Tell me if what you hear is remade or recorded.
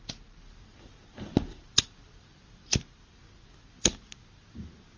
recorded